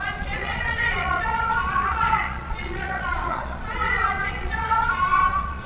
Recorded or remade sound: remade